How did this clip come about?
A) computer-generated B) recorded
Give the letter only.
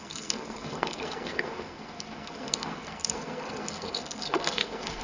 A